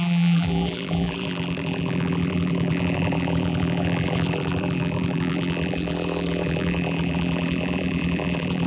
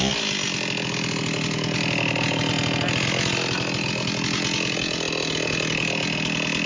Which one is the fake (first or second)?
first